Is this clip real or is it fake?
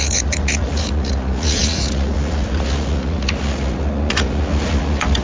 fake